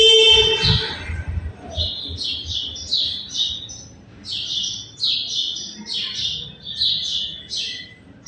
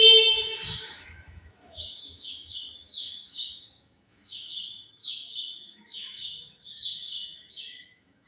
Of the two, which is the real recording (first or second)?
first